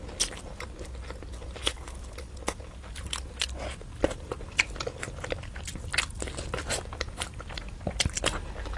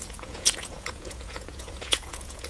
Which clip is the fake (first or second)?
second